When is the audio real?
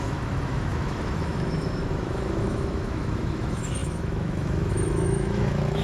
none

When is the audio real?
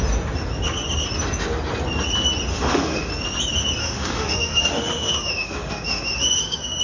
0.0-2.5; 3.1-3.8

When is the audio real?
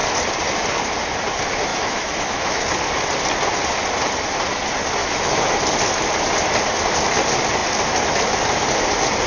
0.0-1.7; 2.6-5.0; 5.5-9.3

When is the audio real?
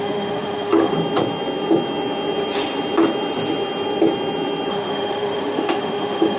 0.9-4.7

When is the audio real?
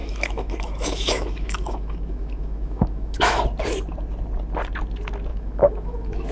3.4-5.3